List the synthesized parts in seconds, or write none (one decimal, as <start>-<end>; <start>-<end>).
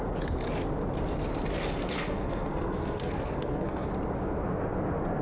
1.8-3.9